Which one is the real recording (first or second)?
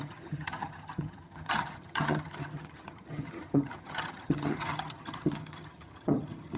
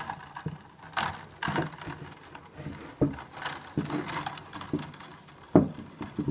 second